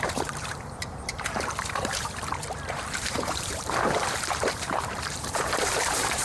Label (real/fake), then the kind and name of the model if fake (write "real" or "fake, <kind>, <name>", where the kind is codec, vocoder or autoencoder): fake, vocoder, BigVGAN v2